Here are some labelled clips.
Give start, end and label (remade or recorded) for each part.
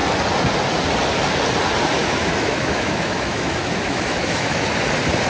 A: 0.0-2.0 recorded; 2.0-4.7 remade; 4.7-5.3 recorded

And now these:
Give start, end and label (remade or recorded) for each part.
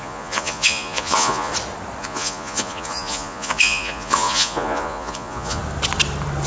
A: 0.0-1.5 remade; 1.5-2.0 recorded; 2.0-5.6 remade; 5.6-6.5 recorded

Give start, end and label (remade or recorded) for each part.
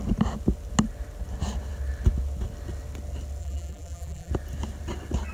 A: 0.0-3.4 recorded; 3.4-4.3 remade; 4.3-5.3 recorded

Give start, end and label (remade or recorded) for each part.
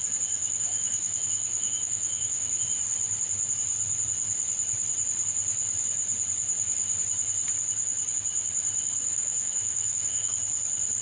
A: 0.0-0.4 recorded; 0.4-2.6 remade; 2.6-9.1 recorded; 9.1-10.3 remade; 10.3-11.0 recorded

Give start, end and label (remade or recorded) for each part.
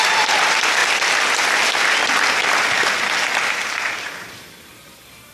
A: 0.0-0.8 remade; 0.8-3.5 recorded; 3.5-5.3 remade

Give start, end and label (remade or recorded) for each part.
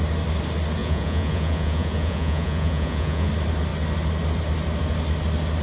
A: 0.0-0.8 recorded; 0.8-3.3 remade; 3.3-5.6 recorded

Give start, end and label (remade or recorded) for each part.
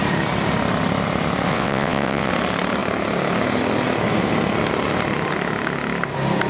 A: 0.0-1.5 recorded; 1.5-2.3 remade; 2.3-6.5 recorded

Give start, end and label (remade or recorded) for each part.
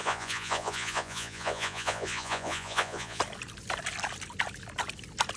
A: 0.0-3.2 remade; 3.2-5.4 recorded